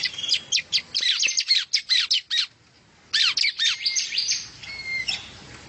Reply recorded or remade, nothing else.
recorded